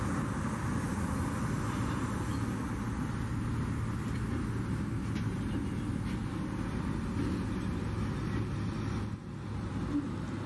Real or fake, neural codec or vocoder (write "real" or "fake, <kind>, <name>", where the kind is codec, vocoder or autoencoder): real